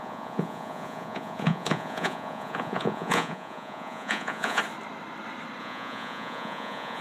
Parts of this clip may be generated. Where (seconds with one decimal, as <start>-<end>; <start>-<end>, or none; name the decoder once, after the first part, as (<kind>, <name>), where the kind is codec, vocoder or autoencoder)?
0.0-4.6 (vocoder, Vocos); 5.6-7.0